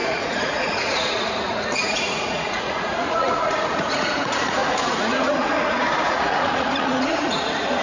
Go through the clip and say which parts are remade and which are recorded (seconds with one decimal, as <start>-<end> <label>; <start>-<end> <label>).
0.0-7.8 remade